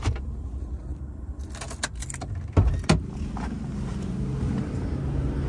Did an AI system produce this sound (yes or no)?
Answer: no